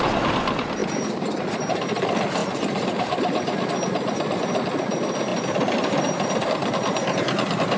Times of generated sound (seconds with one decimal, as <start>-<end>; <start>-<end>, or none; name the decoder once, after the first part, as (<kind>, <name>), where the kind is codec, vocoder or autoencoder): 0.8-1.8 (vocoder, BigVGAN v2); 2.4-3.6